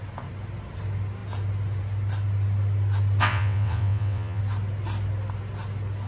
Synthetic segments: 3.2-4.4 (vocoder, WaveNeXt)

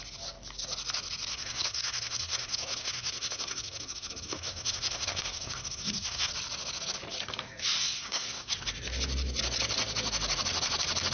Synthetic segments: 1.3-6.3 (codec, SNAC); 7.8-8.5

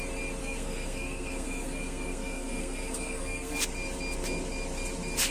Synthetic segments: 0.4-3.6 (codec, SNAC)

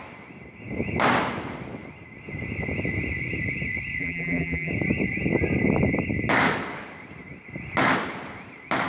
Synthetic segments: 4.0-4.7 (vocoder, BigVGAN v2)

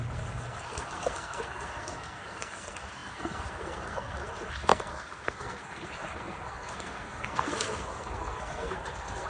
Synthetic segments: 0.0-9.3 (codec, SNAC)